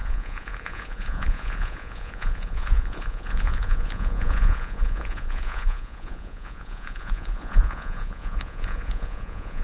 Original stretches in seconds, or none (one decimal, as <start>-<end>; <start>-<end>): none